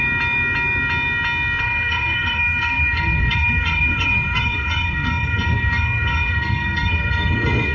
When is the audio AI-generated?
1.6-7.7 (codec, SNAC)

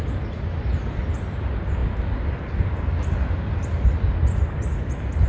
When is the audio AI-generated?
none

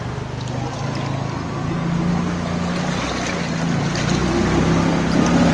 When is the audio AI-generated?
none

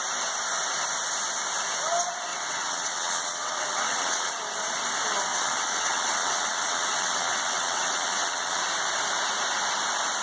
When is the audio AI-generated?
2.3-4.3 (vocoder, WaveNeXt); 5.3-8.6

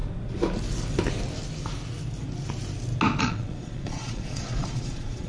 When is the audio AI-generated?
3.2-5.3 (vocoder, Vocos)

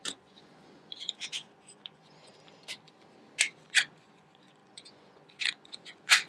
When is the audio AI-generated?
0.0-2.3 (vocoder, Vocos); 3.5-6.3

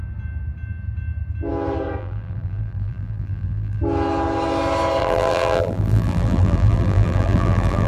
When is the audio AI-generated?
2.0-3.8 (vocoder, BigVGAN v2); 5.0-7.9

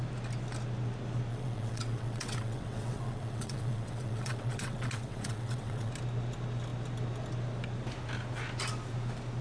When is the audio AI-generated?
1.3-5.9 (vocoder, WaveNeXt)